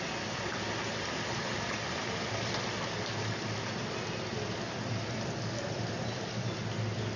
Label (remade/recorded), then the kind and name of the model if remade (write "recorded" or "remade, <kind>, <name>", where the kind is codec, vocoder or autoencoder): recorded